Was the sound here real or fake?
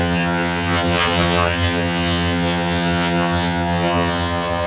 fake